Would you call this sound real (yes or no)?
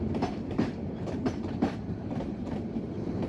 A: no